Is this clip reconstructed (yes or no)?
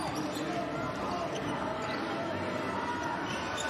no